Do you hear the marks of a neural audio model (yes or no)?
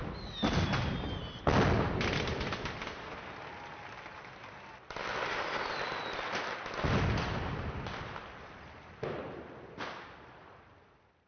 no